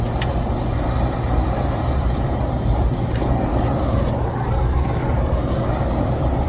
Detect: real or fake fake